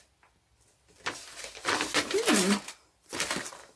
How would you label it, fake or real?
real